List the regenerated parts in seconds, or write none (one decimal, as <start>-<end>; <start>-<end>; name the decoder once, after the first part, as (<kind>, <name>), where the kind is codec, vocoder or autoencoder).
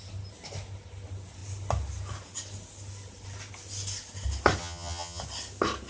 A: 4.6-5.2 (vocoder, HiFi-GAN)